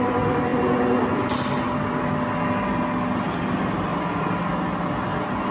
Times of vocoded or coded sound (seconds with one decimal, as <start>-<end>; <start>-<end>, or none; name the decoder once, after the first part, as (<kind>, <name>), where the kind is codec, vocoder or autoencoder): 3.9-4.5 (vocoder, BigVGAN v2)